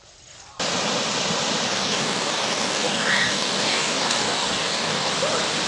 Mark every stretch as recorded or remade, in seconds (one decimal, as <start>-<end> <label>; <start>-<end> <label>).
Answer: 0.0-1.7 recorded; 1.7-5.1 remade; 5.1-5.7 recorded